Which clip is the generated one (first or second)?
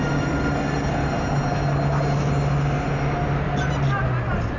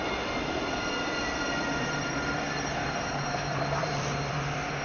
second